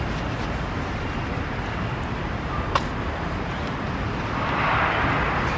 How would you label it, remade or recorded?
recorded